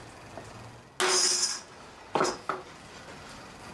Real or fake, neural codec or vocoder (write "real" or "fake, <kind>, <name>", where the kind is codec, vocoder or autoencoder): real